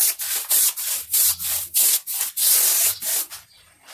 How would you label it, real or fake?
real